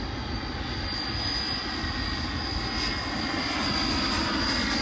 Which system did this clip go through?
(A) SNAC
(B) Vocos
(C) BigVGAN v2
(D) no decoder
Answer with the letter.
D